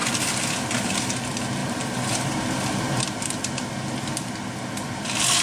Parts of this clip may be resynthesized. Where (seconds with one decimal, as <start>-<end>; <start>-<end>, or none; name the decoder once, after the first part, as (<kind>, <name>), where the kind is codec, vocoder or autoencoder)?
none